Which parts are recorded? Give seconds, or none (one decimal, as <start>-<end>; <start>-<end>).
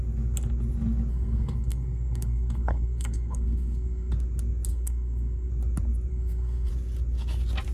0.0-1.1; 4.1-4.7; 5.5-6.1; 6.7-7.7